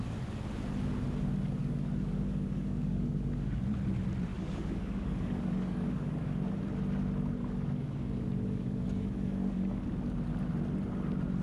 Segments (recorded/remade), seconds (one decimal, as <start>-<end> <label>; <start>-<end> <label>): 0.0-1.6 recorded; 1.6-3.6 remade; 3.6-4.3 recorded; 4.3-6.3 remade; 6.3-7.4 recorded; 7.4-9.8 remade; 9.8-11.4 recorded